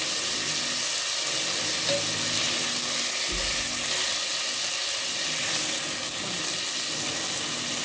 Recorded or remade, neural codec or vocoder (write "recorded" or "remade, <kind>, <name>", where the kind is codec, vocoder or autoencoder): recorded